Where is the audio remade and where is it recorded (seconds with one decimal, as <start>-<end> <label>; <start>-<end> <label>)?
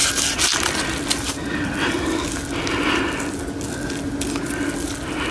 0.0-5.3 recorded